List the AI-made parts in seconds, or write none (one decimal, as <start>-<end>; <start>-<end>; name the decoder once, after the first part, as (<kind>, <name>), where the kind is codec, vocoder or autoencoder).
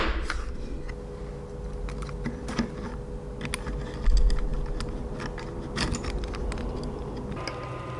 none